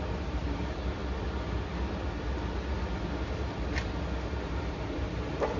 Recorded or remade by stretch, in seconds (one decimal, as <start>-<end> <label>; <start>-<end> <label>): 0.0-1.0 remade; 1.0-4.4 recorded; 4.4-5.6 remade